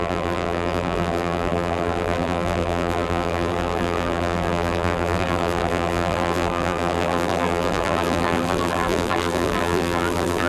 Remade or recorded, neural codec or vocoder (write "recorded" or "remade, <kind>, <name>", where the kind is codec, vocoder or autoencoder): remade, vocoder, BigVGAN v2